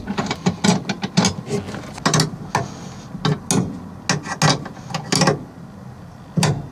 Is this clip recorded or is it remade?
recorded